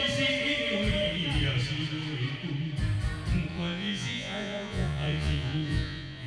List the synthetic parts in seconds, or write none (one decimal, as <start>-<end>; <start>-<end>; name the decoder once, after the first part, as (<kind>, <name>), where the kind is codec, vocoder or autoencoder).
3.5-6.3 (vocoder, Vocos)